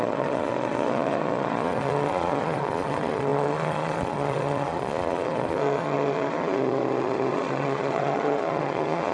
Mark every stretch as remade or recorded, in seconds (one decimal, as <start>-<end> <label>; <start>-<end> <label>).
0.0-9.1 remade